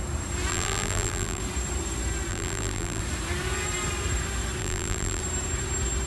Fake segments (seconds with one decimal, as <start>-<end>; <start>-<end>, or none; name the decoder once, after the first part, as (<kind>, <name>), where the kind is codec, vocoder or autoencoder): 0.5-1.4 (vocoder, BigVGAN v2); 2.3-3.0; 4.6-5.2